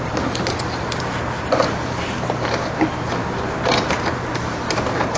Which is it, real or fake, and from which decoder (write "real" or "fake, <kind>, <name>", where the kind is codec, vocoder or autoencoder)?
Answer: fake, vocoder, BigVGAN v2